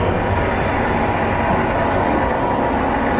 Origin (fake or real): real